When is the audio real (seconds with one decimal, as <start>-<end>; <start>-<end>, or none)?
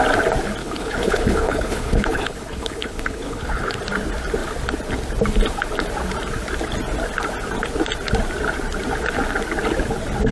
0.0-0.6; 3.8-10.3